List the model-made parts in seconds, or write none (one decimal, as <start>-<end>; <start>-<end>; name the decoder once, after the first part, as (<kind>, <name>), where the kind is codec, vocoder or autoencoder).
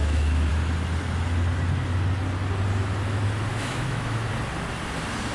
0.0-0.5 (autoencoder, DAC-VAE); 3.5-4.3